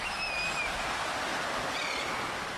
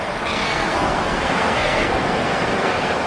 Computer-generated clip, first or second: second